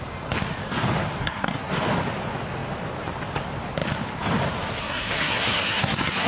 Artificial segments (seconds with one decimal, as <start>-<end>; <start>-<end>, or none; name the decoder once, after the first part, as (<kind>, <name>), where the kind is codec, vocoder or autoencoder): 1.2-1.7 (codec, SNAC); 4.8-6.3